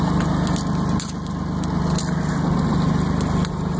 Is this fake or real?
real